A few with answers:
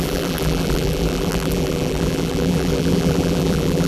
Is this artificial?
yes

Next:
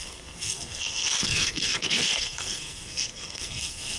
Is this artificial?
yes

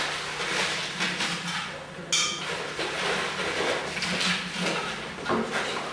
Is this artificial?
no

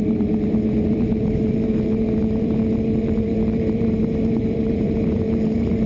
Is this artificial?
yes